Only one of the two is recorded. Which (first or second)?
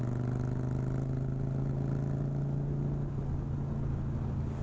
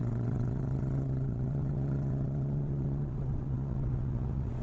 first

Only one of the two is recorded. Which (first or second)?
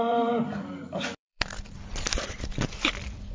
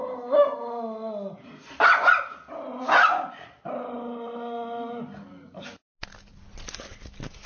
second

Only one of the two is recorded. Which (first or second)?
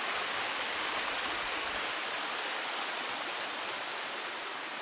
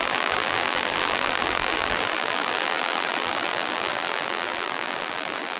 first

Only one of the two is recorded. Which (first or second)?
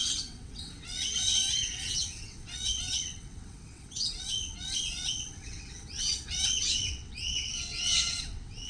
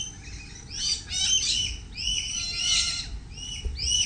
second